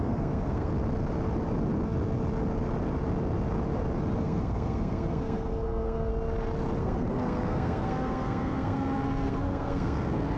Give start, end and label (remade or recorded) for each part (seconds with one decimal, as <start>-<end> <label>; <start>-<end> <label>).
0.0-0.7 remade; 0.7-4.2 recorded; 4.2-6.1 remade; 6.1-6.8 recorded; 6.8-10.4 remade